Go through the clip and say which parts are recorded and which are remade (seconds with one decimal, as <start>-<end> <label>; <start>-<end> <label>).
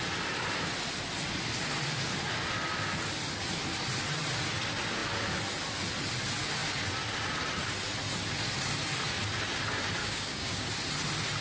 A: 0.0-10.0 recorded; 10.0-10.7 remade; 10.7-11.4 recorded